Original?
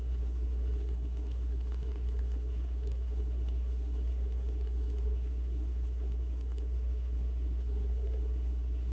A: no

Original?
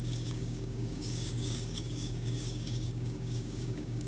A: no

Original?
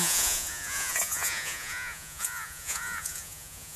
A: no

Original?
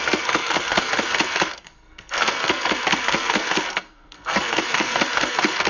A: no